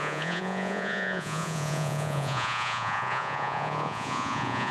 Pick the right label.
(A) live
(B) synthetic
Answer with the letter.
B